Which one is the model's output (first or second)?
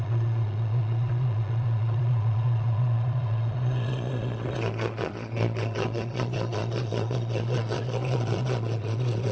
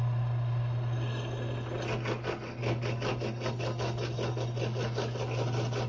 first